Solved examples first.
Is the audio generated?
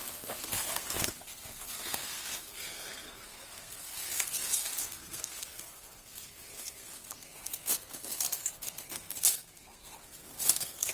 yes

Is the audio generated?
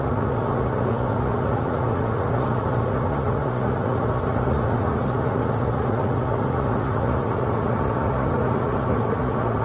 yes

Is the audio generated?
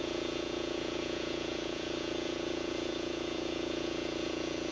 yes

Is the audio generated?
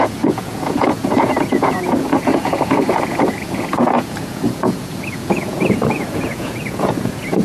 yes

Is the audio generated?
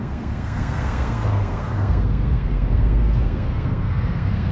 yes